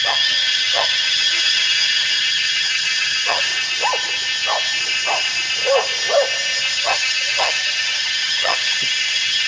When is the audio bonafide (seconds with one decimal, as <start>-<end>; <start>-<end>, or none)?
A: 3.5-6.8